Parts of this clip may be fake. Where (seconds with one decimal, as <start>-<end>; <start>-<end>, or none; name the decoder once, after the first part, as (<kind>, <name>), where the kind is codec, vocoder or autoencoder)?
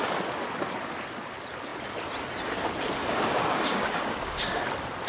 3.0-4.6 (codec, DAC)